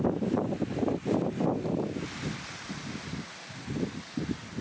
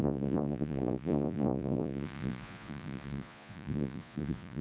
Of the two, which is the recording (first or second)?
first